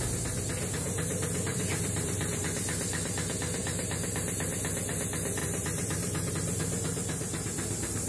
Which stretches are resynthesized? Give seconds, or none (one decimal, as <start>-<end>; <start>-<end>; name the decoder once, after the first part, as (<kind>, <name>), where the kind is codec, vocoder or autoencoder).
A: 1.5-2.4 (vocoder, BigVGAN v2); 5.4-6.3